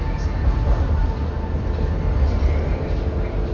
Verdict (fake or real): real